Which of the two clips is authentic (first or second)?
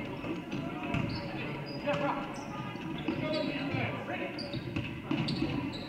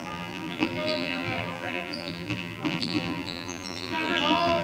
first